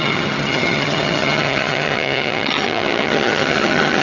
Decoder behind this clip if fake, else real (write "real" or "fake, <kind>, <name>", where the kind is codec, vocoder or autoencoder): fake, vocoder, HiFi-GAN